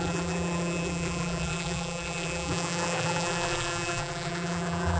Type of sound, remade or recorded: remade